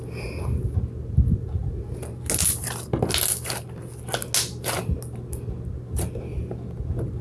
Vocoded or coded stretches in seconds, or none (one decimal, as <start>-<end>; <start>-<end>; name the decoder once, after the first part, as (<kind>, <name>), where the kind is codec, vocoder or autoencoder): none